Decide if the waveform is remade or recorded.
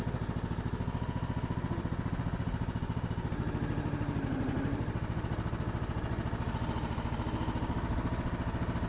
recorded